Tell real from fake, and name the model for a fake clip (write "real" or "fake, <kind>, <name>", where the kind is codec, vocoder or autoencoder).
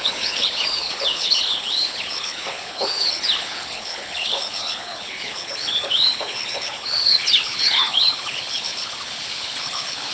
fake, codec, HILCodec